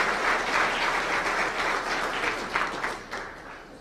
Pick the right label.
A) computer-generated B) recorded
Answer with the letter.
B